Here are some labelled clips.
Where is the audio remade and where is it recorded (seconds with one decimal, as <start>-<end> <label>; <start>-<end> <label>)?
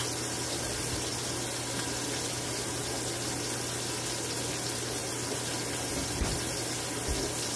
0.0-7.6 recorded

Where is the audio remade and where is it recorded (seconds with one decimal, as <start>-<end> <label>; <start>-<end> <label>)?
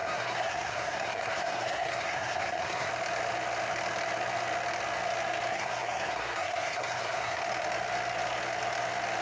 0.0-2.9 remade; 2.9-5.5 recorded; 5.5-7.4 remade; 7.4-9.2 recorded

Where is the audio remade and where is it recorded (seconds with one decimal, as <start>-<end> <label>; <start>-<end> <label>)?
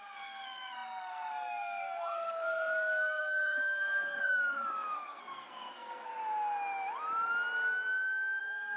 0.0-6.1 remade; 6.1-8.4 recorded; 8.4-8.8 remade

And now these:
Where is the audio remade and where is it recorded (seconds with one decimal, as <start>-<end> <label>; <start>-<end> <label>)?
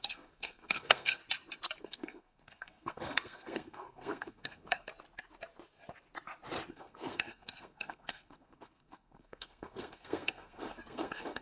0.0-1.2 remade; 1.2-1.8 recorded; 1.8-4.9 remade; 4.9-6.7 recorded; 6.7-11.4 remade